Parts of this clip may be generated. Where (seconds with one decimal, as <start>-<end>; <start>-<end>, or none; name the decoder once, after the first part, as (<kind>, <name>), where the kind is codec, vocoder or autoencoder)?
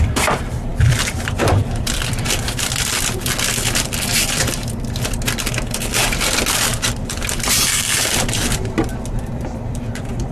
0.0-3.6 (vocoder, BigVGAN v2); 5.7-10.3